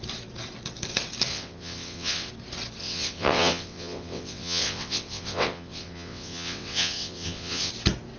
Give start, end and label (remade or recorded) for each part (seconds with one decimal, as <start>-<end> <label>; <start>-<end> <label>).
0.0-1.3 recorded; 1.3-2.3 remade; 2.3-2.8 recorded; 2.8-7.7 remade; 7.7-8.2 recorded